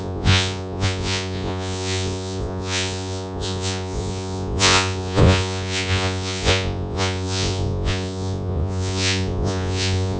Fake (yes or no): yes